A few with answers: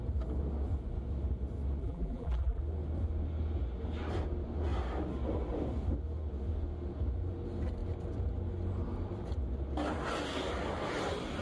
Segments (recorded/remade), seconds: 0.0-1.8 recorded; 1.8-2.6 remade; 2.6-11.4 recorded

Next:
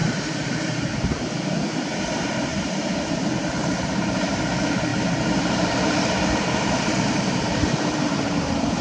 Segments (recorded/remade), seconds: 0.0-1.0 remade; 1.0-2.5 recorded; 2.5-3.1 remade; 3.1-3.6 recorded; 3.6-4.4 remade; 4.4-4.9 recorded; 4.9-8.8 remade

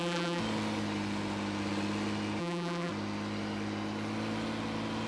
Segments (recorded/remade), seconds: 0.0-0.4 remade; 0.4-2.4 recorded; 2.4-2.9 remade; 2.9-5.1 recorded

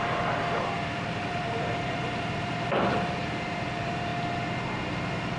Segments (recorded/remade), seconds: 0.0-4.1 remade; 4.1-4.9 recorded; 4.9-5.4 remade